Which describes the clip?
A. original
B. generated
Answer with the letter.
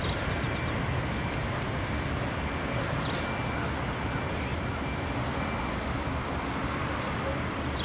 A